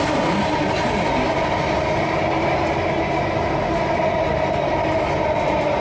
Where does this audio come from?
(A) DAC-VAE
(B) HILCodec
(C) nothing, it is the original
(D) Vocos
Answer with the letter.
C